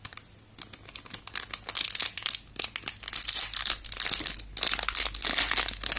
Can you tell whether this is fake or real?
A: real